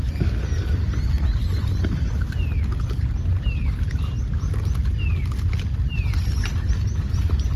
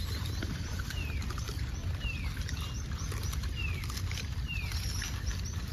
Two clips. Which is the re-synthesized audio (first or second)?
second